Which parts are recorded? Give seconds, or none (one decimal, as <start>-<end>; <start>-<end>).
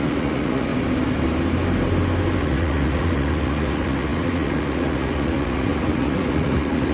0.7-2.4